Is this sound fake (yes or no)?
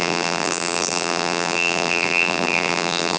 yes